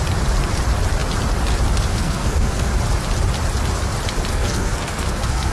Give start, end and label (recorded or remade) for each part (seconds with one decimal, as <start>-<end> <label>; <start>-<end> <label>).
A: 0.0-1.9 recorded; 1.9-2.7 remade; 2.7-4.3 recorded; 4.3-5.5 remade